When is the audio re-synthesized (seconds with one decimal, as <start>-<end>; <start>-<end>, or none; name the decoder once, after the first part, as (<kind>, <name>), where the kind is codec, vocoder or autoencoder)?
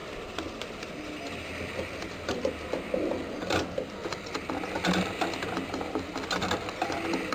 none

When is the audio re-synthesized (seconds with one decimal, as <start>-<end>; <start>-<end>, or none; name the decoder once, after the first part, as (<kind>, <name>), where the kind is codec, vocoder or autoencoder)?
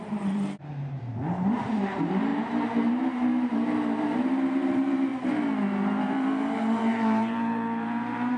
0.0-5.1 (vocoder, BigVGAN v2); 6.0-8.4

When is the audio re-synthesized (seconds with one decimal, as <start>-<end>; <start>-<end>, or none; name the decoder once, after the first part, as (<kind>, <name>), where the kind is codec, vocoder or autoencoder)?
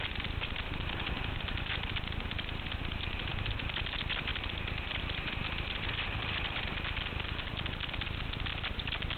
none